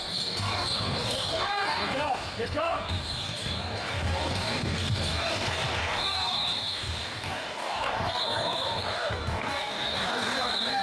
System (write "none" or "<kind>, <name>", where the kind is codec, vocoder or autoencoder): codec, DAC